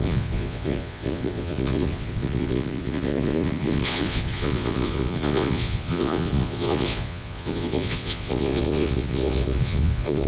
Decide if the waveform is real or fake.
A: fake